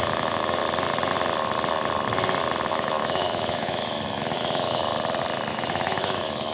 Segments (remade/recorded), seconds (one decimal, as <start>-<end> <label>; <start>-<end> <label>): 0.0-0.6 remade; 0.6-2.7 recorded; 2.7-4.9 remade; 4.9-5.5 recorded; 5.5-6.5 remade